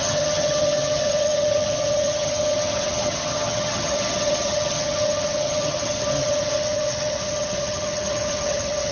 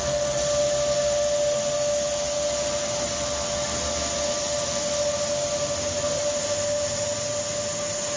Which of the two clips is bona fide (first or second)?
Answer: second